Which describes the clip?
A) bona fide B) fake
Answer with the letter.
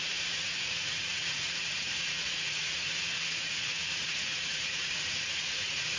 B